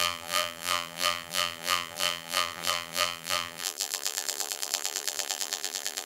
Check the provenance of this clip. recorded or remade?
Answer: remade